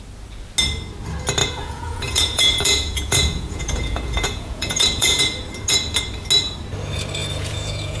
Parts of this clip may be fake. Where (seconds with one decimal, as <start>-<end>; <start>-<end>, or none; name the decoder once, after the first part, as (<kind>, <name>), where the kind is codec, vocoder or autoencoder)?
1.4-5.2 (vocoder, Vocos); 7.2-8.0